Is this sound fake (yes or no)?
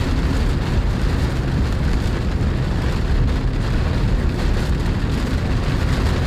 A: no